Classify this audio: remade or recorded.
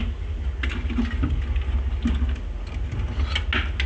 recorded